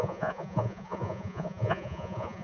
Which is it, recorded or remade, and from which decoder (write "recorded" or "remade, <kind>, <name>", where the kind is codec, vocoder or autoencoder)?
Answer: remade, vocoder, Vocos